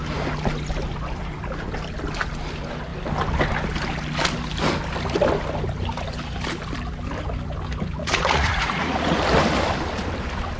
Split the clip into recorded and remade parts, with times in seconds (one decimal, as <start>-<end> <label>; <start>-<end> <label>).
0.0-8.0 recorded; 8.0-9.2 remade; 9.2-10.6 recorded